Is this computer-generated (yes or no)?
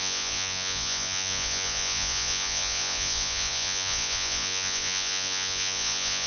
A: yes